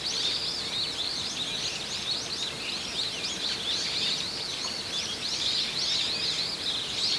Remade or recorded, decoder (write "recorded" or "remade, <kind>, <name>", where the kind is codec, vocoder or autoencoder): recorded